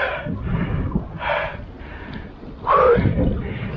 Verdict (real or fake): real